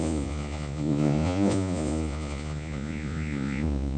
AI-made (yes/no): yes